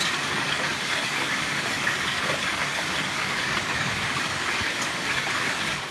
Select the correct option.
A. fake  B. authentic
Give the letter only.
A